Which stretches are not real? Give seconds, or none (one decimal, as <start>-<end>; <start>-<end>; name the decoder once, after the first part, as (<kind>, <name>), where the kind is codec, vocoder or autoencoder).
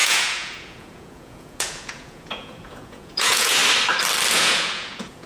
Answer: 0.0-3.6 (vocoder, Vocos); 4.3-5.3